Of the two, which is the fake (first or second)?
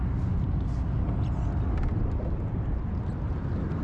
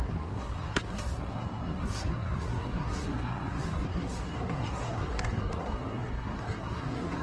second